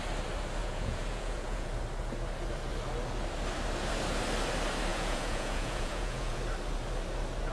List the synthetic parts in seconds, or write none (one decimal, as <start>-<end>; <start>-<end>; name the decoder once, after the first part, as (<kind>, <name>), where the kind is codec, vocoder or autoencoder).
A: 0.6-1.7 (vocoder, Vocos); 4.9-6.4